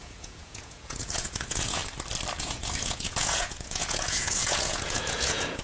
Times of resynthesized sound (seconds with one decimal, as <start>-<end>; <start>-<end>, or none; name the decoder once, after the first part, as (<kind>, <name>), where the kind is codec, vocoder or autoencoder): 0.0-1.8 (vocoder, Vocos); 2.4-5.6